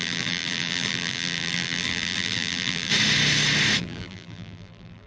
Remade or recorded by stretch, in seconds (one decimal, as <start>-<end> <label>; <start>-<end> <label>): 0.0-2.9 remade; 2.9-3.8 recorded; 3.8-5.1 remade